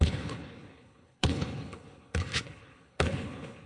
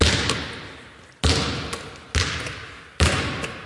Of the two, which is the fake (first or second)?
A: first